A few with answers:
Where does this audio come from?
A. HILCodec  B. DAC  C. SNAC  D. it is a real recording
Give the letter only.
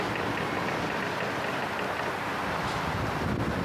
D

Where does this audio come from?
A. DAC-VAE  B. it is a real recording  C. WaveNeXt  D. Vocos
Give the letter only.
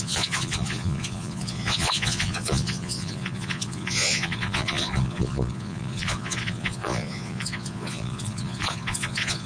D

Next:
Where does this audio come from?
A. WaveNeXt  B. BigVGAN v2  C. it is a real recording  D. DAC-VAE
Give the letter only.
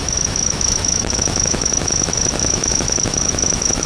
D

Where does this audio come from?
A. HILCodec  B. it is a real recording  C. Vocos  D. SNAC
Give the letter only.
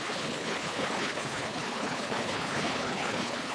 A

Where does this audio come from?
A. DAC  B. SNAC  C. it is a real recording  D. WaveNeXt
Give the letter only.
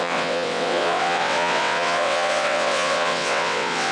D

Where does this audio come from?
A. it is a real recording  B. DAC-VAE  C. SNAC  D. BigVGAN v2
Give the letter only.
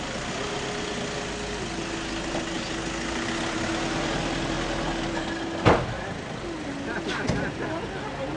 A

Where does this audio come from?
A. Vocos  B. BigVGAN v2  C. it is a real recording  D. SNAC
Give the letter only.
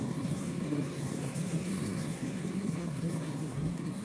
D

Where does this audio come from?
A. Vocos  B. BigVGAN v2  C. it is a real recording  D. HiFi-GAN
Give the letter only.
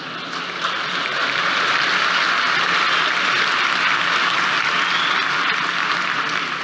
C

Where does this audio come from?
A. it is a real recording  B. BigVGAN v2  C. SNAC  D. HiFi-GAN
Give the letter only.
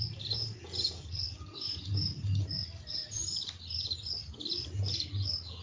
A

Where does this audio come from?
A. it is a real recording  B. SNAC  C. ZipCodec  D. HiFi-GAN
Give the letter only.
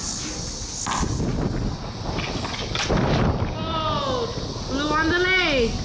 A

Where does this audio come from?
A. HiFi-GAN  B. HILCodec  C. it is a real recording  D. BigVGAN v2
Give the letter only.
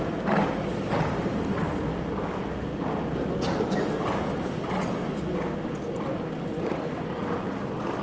C